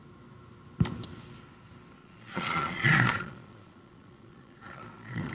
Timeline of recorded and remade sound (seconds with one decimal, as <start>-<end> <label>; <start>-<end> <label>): 0.0-2.0 recorded; 2.0-5.3 remade